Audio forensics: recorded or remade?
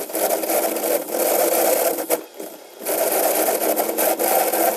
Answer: recorded